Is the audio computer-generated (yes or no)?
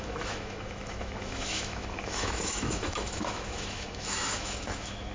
yes